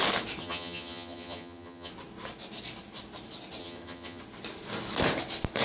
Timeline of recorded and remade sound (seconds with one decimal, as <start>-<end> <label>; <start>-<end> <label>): 0.0-0.4 recorded; 0.4-1.9 remade; 1.9-3.6 recorded; 3.6-4.2 remade; 4.2-5.6 recorded